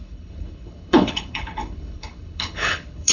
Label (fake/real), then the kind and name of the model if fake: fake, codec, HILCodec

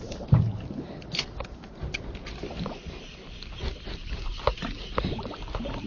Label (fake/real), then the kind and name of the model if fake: real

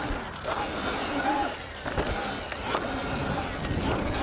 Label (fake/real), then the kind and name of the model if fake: real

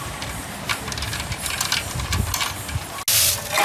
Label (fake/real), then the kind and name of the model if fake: real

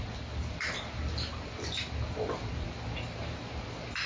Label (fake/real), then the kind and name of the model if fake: real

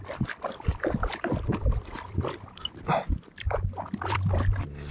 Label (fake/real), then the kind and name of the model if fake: real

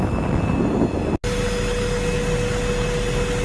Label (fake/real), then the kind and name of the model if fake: real